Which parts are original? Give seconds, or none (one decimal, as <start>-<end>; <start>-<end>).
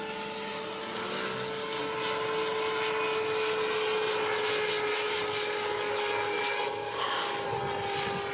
0.0-0.8; 1.8-4.9; 7.6-8.3